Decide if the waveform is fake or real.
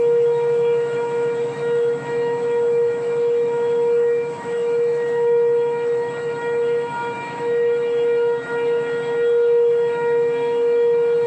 fake